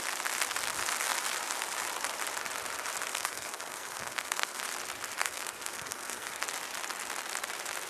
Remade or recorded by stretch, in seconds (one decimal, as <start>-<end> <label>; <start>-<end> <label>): 0.0-3.1 recorded; 3.1-4.6 remade; 4.6-5.2 recorded; 5.2-6.4 remade; 6.4-7.9 recorded